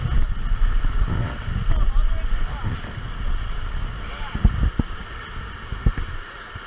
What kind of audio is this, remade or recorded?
recorded